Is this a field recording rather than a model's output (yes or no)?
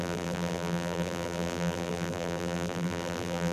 no